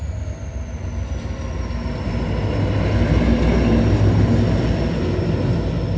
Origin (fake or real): real